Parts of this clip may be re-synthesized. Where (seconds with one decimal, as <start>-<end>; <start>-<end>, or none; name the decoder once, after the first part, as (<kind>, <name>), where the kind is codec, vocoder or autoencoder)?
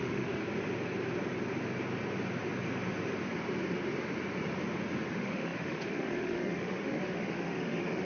0.0-0.4 (autoencoder, DAC-VAE); 5.1-8.0